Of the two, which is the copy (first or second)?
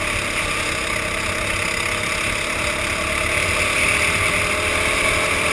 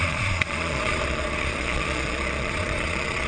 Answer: second